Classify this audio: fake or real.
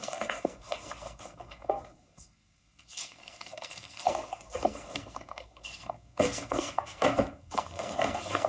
fake